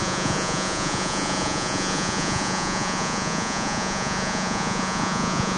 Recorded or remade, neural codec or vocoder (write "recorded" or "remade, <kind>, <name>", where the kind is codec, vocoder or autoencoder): remade, vocoder, Vocos